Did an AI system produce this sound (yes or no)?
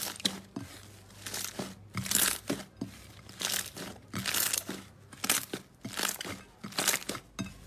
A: no